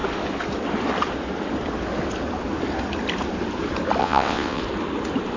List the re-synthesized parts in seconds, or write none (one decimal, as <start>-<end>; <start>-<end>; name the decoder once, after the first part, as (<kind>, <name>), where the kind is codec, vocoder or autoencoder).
4.0-4.6 (vocoder, WaveNeXt)